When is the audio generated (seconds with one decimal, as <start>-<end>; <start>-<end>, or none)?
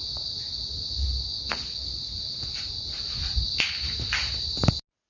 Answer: none